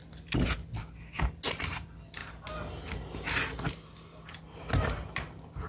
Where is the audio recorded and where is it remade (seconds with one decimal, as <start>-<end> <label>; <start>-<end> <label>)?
0.0-5.7 recorded